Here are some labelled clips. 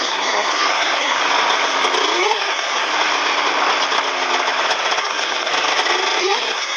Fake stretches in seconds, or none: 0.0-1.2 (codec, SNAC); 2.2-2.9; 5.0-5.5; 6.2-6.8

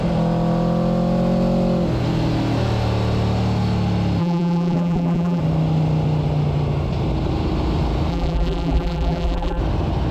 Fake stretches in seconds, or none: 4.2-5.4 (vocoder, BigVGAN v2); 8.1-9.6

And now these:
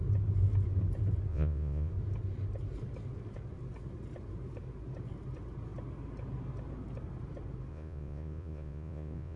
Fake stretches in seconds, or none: 1.3-1.9 (vocoder, Vocos); 7.7-9.4

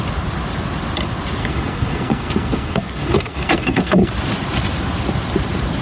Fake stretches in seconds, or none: 1.4-4.1 (codec, SNAC)